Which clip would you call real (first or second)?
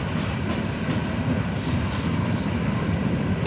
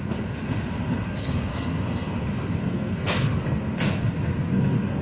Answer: first